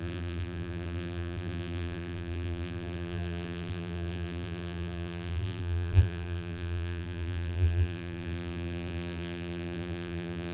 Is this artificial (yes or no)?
yes